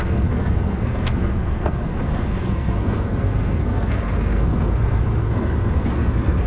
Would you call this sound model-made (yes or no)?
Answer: yes